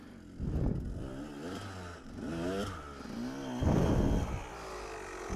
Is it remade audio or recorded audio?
recorded